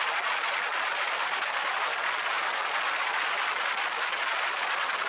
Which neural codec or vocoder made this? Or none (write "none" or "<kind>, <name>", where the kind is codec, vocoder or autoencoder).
none